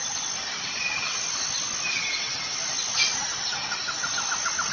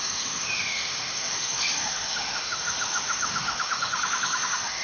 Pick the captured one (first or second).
first